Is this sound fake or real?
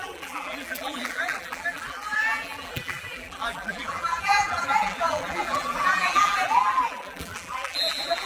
fake